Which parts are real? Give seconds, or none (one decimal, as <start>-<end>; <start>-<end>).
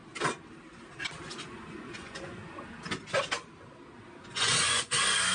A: 0.0-1.5; 2.4-4.3